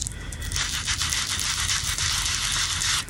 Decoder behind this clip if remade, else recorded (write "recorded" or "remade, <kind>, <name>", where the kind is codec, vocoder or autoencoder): recorded